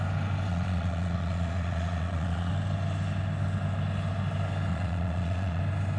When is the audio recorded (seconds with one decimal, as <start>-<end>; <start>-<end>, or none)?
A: 0.0-0.5; 2.5-4.7; 5.6-6.0